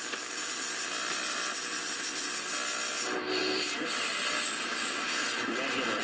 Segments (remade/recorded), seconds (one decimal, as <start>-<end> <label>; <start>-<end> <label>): 0.0-3.4 recorded; 3.4-4.6 remade; 4.6-6.0 recorded